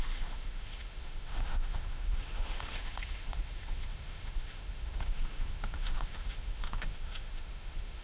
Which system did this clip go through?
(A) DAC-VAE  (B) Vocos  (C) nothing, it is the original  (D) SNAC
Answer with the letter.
A